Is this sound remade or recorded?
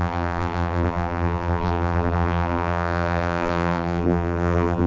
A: remade